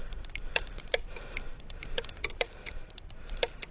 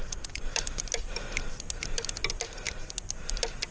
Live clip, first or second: second